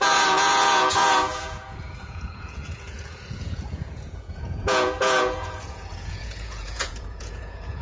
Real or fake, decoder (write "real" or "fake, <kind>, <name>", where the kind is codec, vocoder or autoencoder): fake, vocoder, Vocos